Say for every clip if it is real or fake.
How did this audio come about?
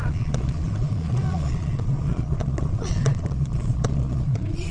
fake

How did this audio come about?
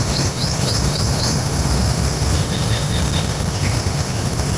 fake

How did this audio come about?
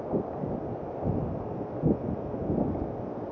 real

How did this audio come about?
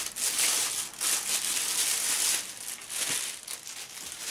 real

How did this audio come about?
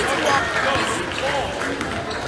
real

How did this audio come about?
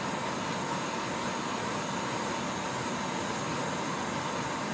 real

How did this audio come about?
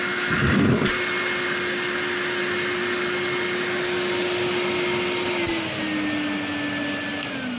real